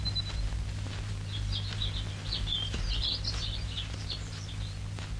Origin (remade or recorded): recorded